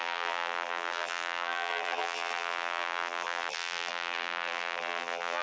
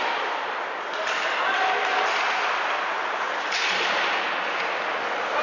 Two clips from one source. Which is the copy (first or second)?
first